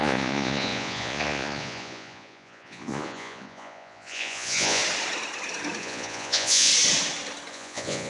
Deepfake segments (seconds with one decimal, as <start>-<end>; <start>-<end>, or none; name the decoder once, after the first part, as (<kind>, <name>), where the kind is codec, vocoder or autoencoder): 0.0-4.8 (vocoder, Vocos); 5.8-6.7; 7.5-8.1